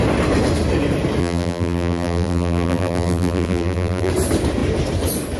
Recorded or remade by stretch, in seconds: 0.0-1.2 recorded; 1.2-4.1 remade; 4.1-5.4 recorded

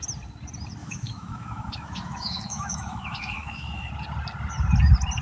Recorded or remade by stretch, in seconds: 0.0-0.8 recorded; 0.8-3.9 remade; 3.9-5.2 recorded

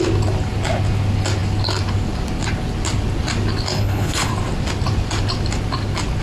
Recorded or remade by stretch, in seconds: 0.0-3.7 recorded; 3.7-4.3 remade; 4.3-6.2 recorded

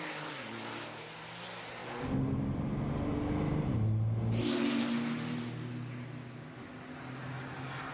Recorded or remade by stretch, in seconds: 0.0-7.9 recorded

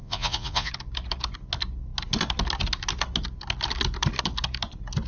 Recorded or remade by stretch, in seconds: 0.0-0.7 remade; 0.7-5.1 recorded

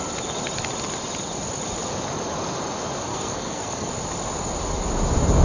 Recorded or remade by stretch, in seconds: 0.0-3.1 recorded; 3.1-3.9 remade; 3.9-5.4 recorded

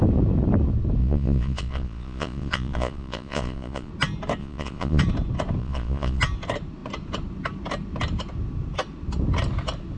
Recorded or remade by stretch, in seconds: 0.0-1.0 recorded; 1.0-3.9 remade; 3.9-4.4 recorded; 4.4-5.0 remade; 5.0-5.6 recorded; 5.6-6.2 remade; 6.2-10.0 recorded